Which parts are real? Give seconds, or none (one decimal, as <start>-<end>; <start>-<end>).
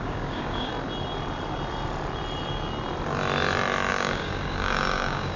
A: 0.7-3.9